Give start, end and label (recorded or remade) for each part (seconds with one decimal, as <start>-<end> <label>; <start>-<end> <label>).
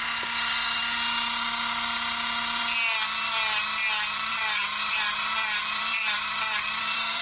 0.0-4.3 recorded; 4.3-7.2 remade